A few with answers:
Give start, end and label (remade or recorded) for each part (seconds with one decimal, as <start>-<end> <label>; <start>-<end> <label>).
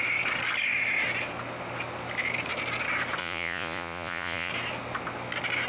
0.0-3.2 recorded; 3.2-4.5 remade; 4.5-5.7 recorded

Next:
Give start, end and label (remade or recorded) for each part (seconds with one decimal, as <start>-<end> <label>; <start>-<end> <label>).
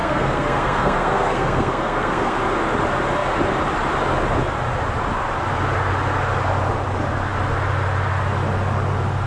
0.0-2.4 remade; 2.4-9.3 recorded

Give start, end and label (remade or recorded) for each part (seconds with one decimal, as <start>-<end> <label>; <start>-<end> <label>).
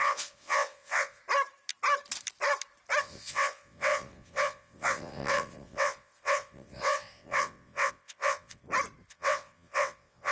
0.0-1.2 remade; 1.2-3.0 recorded; 3.0-8.6 remade; 8.6-9.1 recorded; 9.1-10.3 remade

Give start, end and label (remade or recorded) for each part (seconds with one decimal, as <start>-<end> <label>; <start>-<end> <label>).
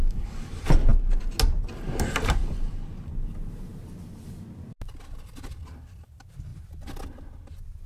0.0-0.5 remade; 0.5-7.9 recorded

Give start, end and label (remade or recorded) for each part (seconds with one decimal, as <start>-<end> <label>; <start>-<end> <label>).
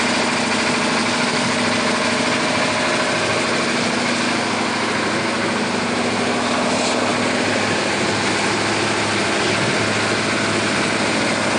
0.0-1.0 recorded; 1.0-1.6 remade; 1.6-11.6 recorded